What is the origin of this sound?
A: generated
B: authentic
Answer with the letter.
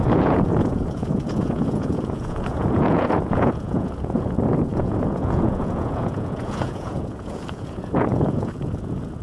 A